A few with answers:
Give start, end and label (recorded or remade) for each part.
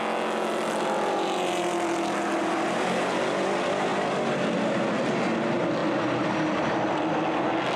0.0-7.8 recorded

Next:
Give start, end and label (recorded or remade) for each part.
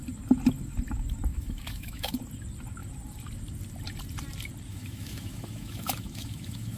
0.0-1.3 recorded; 1.3-2.2 remade; 2.2-4.7 recorded; 4.7-6.8 remade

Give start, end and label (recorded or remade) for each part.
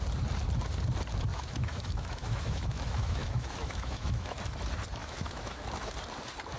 0.0-1.3 recorded; 1.3-4.4 remade; 4.4-5.0 recorded; 5.0-5.6 remade; 5.6-6.6 recorded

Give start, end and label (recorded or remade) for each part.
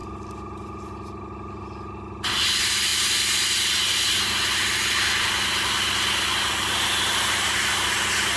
0.0-8.4 recorded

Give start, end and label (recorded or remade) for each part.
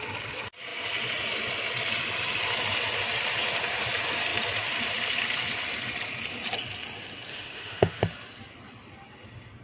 0.0-7.3 recorded; 7.3-8.0 remade; 8.0-9.6 recorded